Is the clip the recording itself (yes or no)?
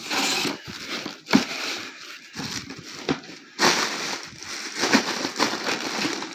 yes